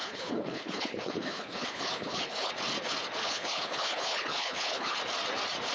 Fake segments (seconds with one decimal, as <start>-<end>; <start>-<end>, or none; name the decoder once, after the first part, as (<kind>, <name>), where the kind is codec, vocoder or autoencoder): 0.0-2.5 (codec, HILCodec); 3.2-5.0